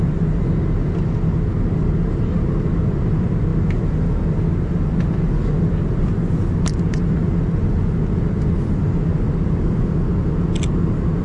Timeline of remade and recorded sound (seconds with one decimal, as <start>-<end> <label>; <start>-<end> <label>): 0.0-11.2 recorded